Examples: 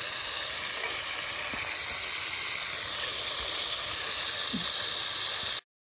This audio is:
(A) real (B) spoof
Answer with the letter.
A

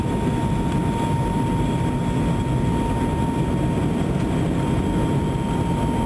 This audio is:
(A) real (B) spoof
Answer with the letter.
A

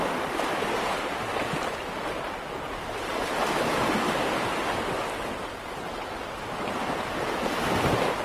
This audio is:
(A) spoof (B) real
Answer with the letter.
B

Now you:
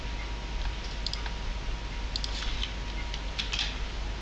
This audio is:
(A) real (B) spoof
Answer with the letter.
A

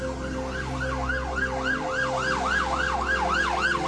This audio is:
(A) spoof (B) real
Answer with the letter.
B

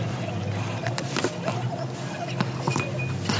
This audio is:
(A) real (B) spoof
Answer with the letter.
A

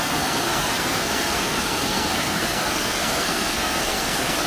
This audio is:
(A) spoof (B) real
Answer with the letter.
A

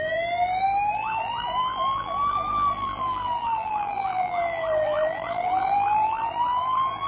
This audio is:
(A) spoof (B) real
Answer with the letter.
A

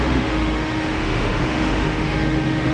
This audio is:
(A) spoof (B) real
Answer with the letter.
A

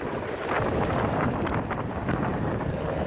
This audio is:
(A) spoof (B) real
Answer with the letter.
B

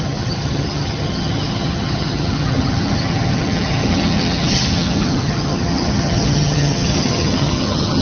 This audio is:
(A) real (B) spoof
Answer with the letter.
B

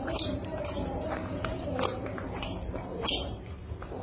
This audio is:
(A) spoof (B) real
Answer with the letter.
A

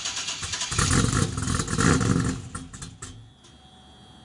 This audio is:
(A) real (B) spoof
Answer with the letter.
A